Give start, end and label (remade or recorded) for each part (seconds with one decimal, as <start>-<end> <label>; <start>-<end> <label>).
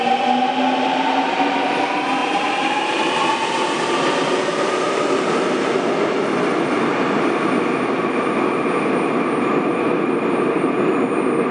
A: 0.0-2.2 recorded; 2.2-3.0 remade; 3.0-11.5 recorded